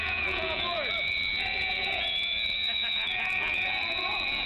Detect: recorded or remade remade